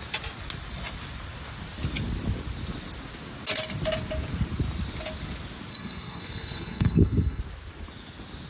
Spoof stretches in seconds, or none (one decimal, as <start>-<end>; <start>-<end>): 5.7-7.4